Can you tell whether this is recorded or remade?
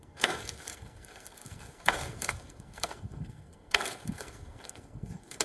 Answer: remade